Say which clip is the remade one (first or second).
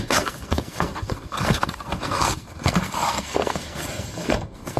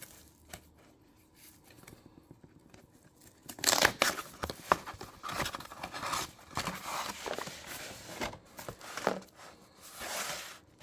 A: first